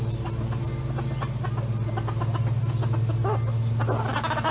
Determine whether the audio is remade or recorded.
recorded